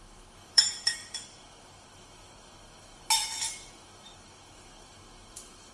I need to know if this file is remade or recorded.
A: remade